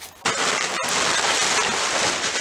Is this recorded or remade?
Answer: recorded